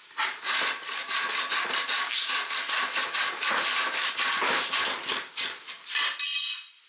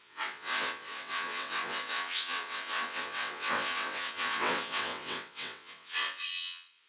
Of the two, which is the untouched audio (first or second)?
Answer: first